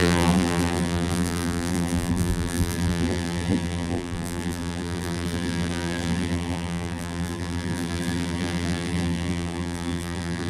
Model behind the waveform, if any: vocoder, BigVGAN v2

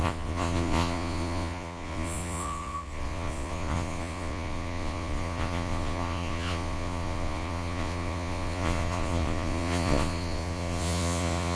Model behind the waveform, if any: vocoder, Vocos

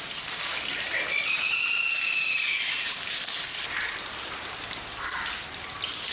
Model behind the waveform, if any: none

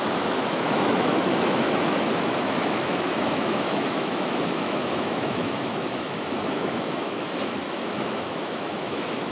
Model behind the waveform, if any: autoencoder, DAC-VAE